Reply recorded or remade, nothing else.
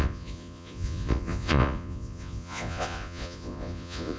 remade